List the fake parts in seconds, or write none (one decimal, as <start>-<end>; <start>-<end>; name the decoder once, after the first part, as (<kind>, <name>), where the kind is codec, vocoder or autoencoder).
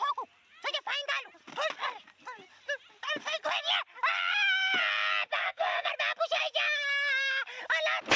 5.4-5.9 (codec, SNAC)